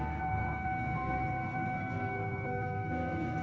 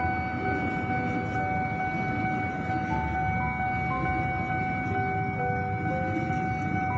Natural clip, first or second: second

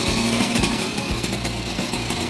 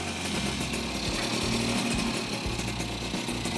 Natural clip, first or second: second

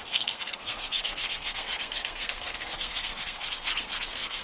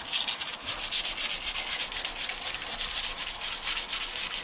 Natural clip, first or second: second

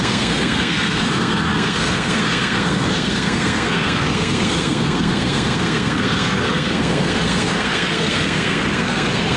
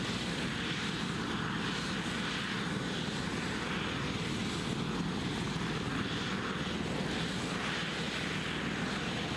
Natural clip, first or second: second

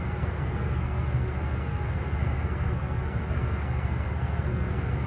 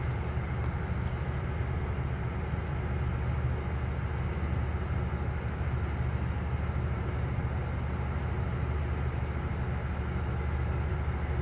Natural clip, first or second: second